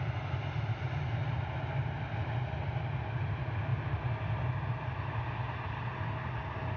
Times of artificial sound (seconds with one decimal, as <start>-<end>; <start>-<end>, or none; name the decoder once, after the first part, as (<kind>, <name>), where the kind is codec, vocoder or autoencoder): none